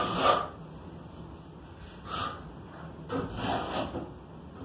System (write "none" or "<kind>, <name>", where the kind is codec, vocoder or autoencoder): none